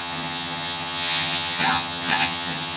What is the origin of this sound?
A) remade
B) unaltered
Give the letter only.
A